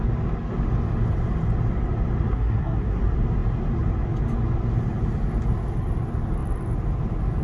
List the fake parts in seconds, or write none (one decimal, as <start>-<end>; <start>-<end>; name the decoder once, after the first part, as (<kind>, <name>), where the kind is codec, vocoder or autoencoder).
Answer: 2.3-3.0 (codec, SNAC)